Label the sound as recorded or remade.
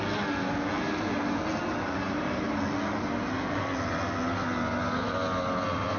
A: recorded